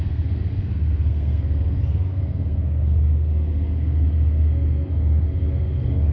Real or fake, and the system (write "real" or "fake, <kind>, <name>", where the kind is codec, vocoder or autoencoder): fake, codec, SNAC